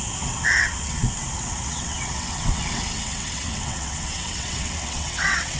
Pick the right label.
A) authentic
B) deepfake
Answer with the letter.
B